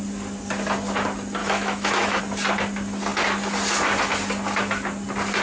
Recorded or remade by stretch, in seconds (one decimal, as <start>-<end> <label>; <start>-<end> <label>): 0.0-1.4 recorded; 1.4-2.2 remade; 2.2-5.4 recorded